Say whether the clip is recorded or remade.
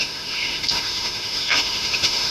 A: remade